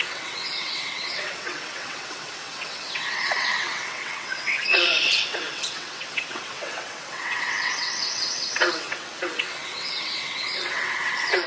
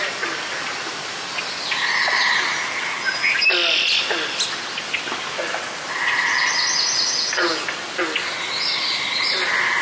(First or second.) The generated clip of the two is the first